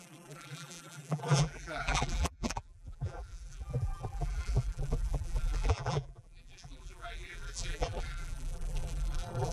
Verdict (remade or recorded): remade